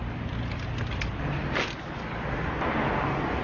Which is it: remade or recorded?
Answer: recorded